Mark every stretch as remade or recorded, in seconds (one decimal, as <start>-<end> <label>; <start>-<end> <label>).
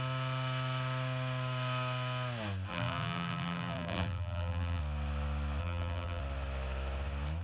0.0-2.7 recorded; 2.7-4.8 remade; 4.8-5.6 recorded; 5.6-6.2 remade; 6.2-7.4 recorded